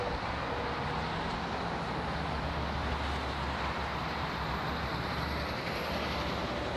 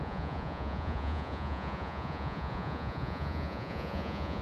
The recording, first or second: first